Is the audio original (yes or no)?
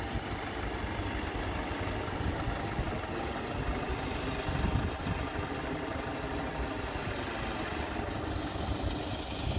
yes